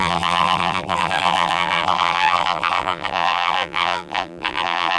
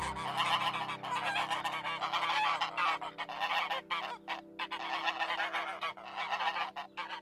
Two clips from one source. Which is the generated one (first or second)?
first